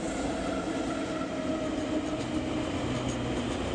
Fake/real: real